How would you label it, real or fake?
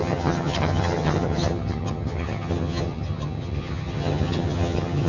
fake